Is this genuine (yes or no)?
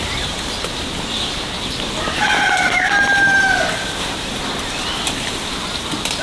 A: yes